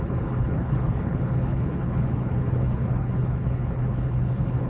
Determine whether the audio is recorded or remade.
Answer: remade